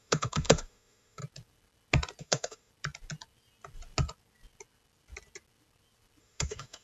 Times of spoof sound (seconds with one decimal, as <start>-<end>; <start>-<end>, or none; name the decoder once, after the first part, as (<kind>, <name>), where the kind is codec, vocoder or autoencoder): 0.0-1.2 (autoencoder, DAC-VAE); 2.2-2.7; 6.2-6.8